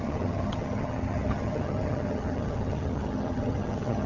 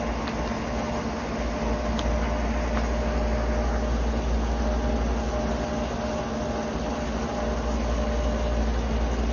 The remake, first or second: first